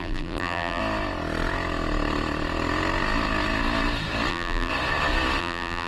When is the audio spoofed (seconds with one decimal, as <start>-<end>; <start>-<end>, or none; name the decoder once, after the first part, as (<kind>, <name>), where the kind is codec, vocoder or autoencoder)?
0.0-0.8 (vocoder, BigVGAN v2); 4.3-4.7; 5.4-5.9